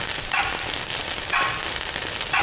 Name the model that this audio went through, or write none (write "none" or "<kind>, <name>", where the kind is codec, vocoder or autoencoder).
vocoder, BigVGAN v2